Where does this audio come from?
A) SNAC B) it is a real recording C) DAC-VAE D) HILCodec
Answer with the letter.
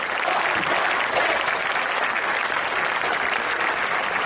B